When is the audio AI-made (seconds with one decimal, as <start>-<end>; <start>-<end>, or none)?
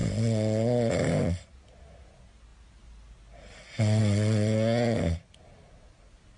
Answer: none